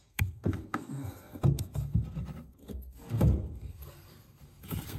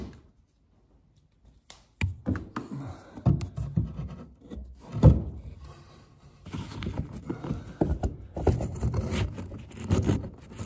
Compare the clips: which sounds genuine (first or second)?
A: second